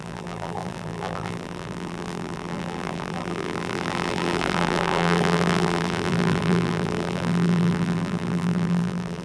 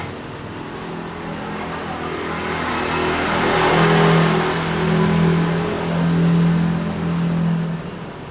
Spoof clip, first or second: first